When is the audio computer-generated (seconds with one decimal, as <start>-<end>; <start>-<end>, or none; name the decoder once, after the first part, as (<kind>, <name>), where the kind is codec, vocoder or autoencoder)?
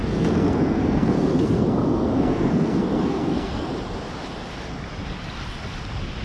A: 0.0-3.7 (codec, SNAC)